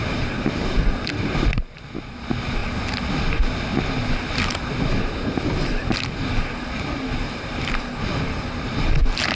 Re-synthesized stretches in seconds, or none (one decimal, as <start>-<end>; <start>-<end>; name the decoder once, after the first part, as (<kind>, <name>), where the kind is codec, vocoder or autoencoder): none